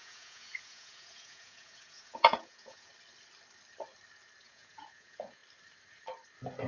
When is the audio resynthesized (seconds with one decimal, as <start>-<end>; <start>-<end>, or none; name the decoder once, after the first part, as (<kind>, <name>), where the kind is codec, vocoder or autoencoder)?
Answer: 0.0-2.9 (vocoder, Vocos); 4.4-5.4